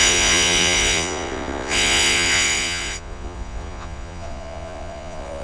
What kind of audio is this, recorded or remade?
remade